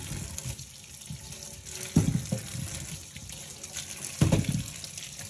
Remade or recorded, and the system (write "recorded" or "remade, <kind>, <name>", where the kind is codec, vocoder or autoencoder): recorded